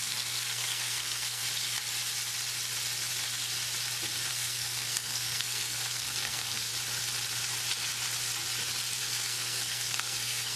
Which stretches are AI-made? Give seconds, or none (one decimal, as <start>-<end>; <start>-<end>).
0.0-1.4; 4.3-6.7; 9.0-10.6